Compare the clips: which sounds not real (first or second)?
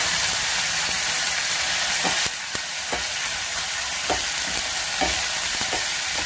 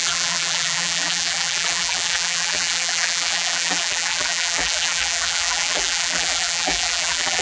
second